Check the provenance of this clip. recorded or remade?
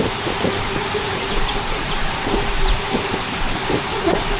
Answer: remade